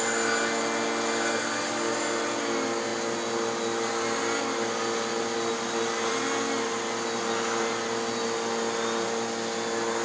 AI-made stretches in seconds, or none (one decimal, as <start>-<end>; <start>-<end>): none